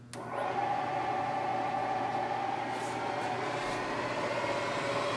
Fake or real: real